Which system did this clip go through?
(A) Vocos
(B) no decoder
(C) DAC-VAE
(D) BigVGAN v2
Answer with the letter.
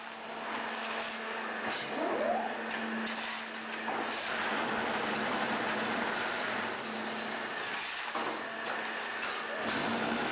B